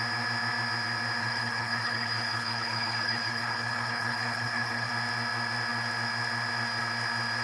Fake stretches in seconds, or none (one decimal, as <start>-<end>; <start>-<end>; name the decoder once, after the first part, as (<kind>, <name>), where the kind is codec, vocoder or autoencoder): 1.2-4.9 (codec, HILCodec)